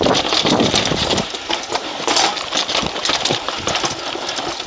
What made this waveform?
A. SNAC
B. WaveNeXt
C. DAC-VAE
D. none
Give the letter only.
D